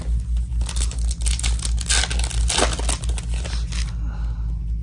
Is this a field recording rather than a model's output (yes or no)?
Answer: yes